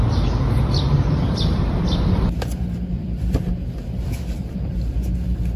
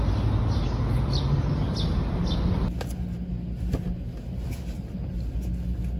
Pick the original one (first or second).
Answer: second